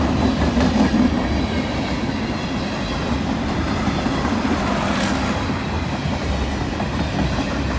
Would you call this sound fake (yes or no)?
no